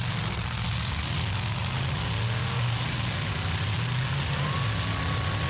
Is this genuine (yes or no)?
yes